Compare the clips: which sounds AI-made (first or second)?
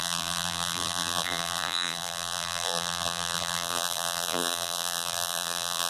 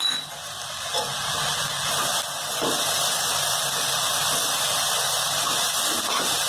first